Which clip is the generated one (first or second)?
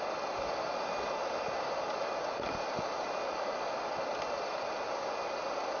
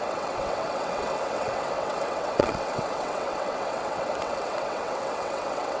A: second